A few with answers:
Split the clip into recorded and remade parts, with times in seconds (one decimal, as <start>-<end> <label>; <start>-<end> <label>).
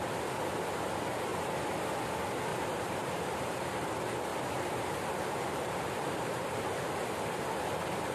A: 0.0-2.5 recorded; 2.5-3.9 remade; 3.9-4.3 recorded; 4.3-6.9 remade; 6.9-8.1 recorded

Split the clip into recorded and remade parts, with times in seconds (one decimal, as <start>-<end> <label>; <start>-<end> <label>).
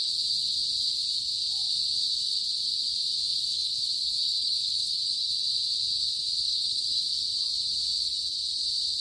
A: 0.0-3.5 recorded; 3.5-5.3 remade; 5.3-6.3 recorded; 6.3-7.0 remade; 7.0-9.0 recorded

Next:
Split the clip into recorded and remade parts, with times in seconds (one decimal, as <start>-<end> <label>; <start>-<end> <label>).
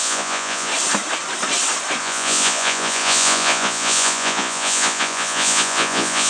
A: 0.0-0.7 remade; 0.7-2.0 recorded; 2.0-6.3 remade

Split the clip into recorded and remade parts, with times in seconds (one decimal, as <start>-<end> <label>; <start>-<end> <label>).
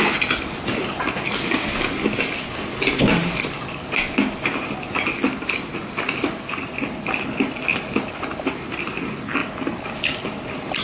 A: 0.0-10.8 recorded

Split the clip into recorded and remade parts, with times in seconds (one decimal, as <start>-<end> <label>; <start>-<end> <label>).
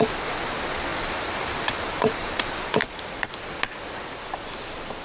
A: 0.0-0.9 recorded; 0.9-2.4 remade; 2.4-2.8 recorded; 2.8-3.3 remade; 3.3-5.0 recorded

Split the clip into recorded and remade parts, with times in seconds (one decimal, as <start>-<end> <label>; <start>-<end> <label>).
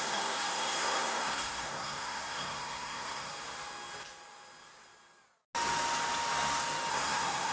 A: 0.0-3.3 remade; 3.3-6.9 recorded; 6.9-7.5 remade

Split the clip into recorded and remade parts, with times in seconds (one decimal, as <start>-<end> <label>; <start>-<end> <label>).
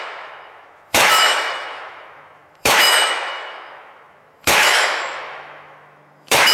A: 0.0-6.5 remade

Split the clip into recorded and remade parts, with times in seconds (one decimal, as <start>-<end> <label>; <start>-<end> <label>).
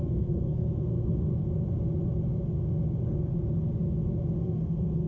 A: 0.0-1.3 remade; 1.3-4.4 recorded; 4.4-5.1 remade